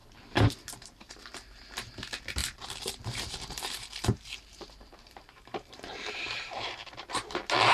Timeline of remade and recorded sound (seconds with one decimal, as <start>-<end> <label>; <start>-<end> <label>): 0.0-2.4 recorded; 2.4-7.0 remade; 7.0-7.7 recorded